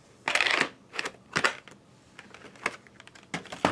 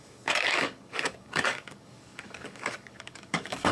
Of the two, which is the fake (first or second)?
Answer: second